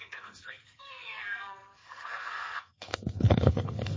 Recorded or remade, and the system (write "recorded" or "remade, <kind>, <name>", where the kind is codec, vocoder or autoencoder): remade, codec, SNAC